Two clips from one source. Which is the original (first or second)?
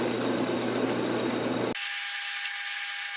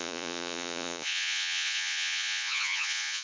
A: first